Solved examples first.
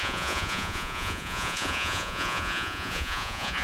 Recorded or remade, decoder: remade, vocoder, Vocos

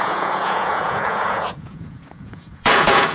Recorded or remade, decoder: remade, vocoder, Vocos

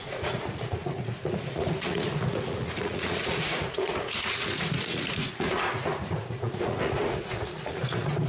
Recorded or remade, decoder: remade, vocoder, Vocos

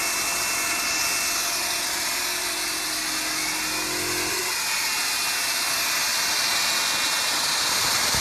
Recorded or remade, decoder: recorded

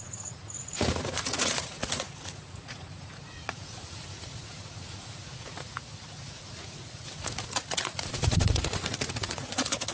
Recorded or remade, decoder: remade, vocoder, Vocos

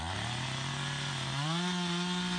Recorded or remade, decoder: recorded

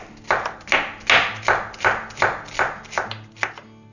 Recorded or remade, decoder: recorded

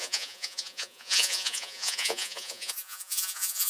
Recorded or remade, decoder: remade, vocoder, Vocos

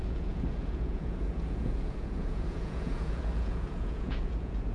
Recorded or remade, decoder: remade, vocoder, Vocos